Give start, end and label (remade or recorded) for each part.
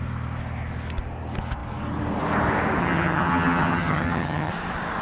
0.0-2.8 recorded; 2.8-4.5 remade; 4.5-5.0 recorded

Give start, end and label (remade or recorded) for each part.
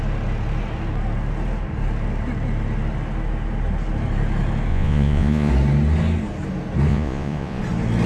0.0-4.7 recorded; 4.7-5.5 remade; 5.5-6.9 recorded; 6.9-7.6 remade; 7.6-8.1 recorded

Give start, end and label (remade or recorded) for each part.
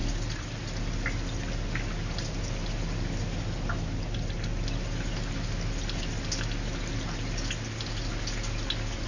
0.0-9.1 recorded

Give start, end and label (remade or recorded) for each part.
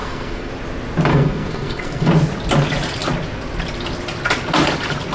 0.0-0.5 remade; 0.5-1.1 recorded; 1.1-2.1 remade; 2.1-5.1 recorded